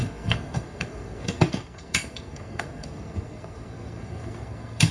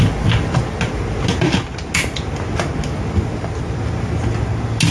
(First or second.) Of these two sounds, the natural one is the second